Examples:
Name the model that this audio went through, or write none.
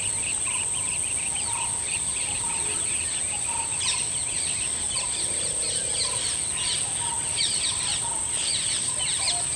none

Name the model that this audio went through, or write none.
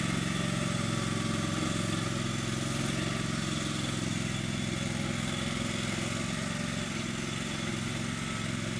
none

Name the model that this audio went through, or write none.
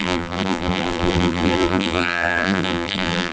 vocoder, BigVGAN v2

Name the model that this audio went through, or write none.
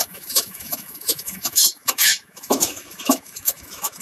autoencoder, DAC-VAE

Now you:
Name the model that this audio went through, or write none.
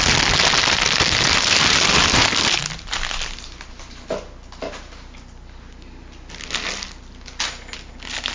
none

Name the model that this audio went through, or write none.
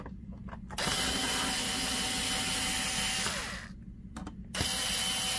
none